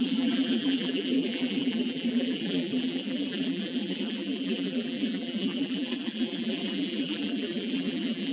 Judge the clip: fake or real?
fake